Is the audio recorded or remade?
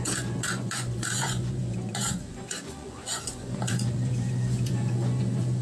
remade